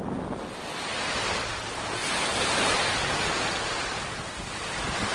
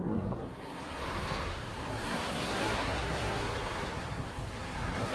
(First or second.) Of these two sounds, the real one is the first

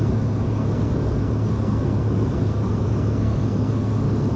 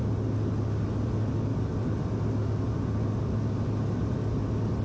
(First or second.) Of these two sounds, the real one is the second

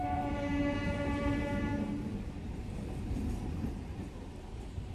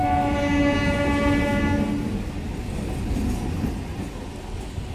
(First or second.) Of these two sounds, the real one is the second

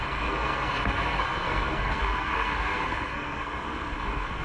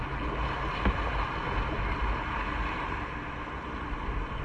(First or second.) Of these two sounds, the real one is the second